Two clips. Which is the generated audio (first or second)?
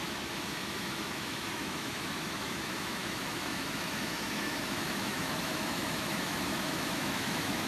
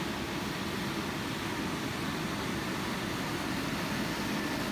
first